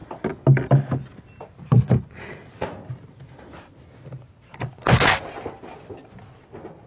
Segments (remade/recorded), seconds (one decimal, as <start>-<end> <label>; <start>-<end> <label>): 0.0-4.7 recorded; 4.7-5.2 remade; 5.2-6.9 recorded